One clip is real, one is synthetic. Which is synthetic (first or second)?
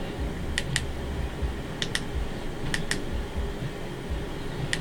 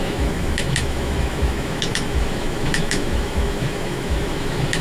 second